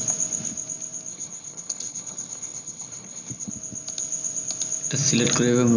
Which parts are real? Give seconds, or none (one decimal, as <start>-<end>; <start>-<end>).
0.0-1.1; 3.5-5.8